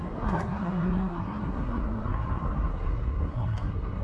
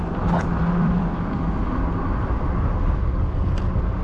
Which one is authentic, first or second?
second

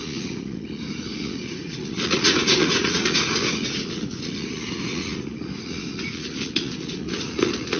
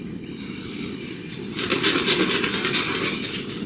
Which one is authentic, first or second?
second